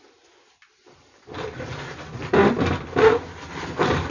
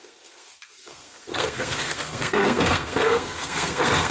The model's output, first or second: second